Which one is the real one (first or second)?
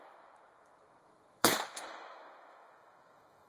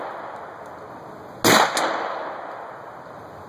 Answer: second